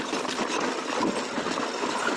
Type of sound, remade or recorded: recorded